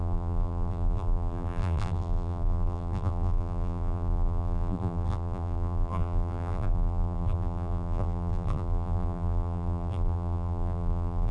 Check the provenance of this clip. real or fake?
fake